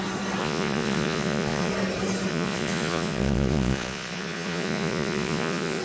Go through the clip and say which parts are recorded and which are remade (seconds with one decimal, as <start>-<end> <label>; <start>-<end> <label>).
0.0-0.4 recorded; 0.4-1.7 remade; 1.7-2.3 recorded; 2.3-5.8 remade